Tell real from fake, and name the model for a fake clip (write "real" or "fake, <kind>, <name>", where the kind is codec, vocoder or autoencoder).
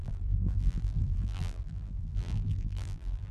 fake, vocoder, BigVGAN v2